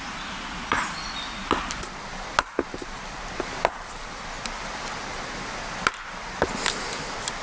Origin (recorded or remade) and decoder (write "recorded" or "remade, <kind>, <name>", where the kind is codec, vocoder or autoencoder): recorded